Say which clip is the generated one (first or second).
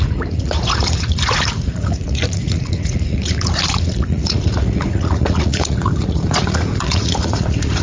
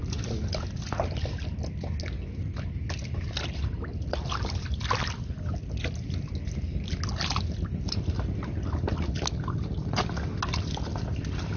first